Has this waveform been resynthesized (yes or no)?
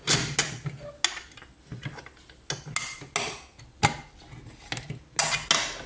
no